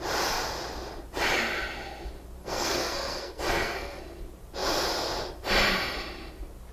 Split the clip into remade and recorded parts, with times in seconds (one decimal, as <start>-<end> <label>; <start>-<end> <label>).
0.0-2.4 recorded; 2.4-4.0 remade; 4.0-6.7 recorded